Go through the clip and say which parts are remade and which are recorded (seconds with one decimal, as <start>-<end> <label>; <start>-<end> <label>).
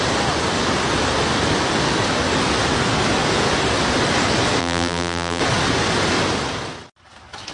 0.0-4.6 recorded; 4.6-5.4 remade; 5.4-7.5 recorded